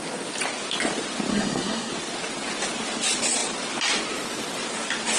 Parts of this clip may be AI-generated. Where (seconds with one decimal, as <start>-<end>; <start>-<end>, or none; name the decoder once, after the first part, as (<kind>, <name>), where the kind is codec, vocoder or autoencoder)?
1.3-1.9 (codec, SNAC)